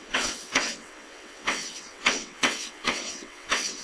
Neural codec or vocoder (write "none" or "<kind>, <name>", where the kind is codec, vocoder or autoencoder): vocoder, WaveNeXt